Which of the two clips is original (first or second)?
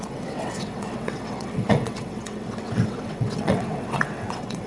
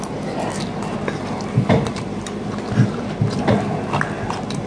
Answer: second